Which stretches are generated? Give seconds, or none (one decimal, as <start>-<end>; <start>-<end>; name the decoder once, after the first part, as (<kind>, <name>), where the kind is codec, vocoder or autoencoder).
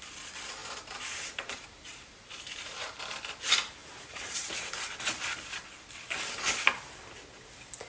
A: 0.6-3.0 (vocoder, BigVGAN v2); 3.8-5.0